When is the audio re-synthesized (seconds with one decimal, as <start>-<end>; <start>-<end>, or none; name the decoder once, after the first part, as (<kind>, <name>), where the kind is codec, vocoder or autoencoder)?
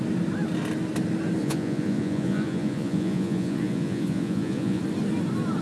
1.4-4.8 (vocoder, Vocos)